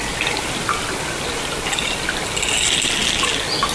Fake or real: real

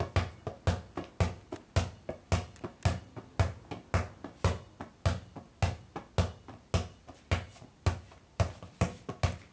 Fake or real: real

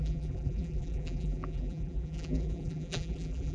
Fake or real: fake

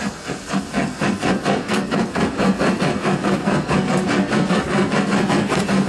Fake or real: fake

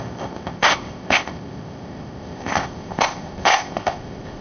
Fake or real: fake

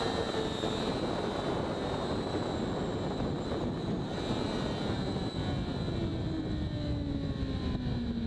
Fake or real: real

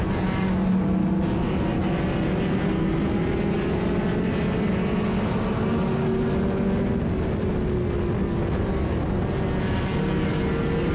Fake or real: real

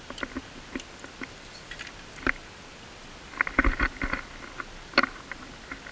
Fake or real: real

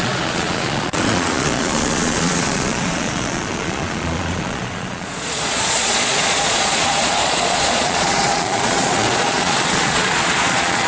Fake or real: fake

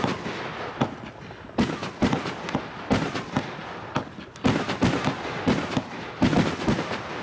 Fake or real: real